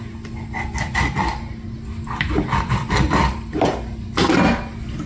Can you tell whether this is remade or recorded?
recorded